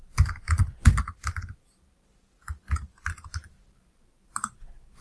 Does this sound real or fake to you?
real